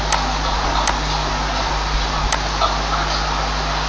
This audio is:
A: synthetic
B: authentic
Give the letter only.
B